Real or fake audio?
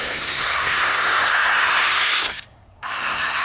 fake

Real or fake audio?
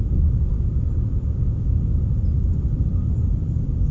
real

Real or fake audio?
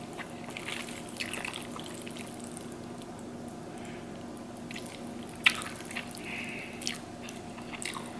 real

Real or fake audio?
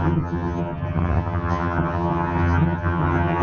fake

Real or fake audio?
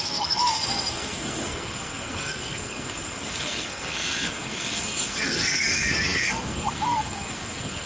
fake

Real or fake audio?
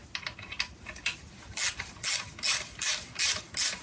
real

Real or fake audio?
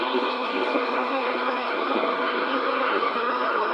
fake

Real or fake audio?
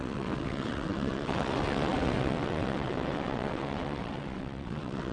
fake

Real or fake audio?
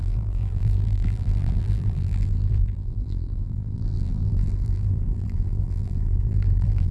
fake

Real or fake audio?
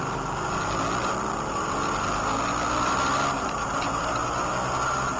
real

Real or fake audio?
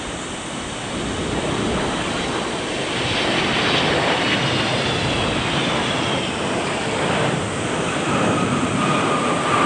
real